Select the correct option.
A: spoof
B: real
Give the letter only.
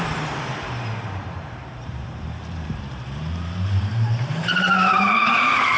A